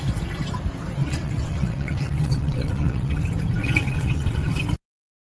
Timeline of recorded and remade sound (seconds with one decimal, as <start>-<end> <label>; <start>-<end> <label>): 0.0-1.0 recorded; 1.0-3.2 remade; 3.2-3.6 recorded; 3.6-4.6 remade; 4.6-5.2 recorded